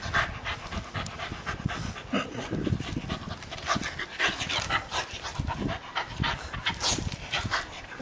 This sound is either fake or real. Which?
fake